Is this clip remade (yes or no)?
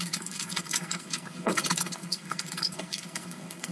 yes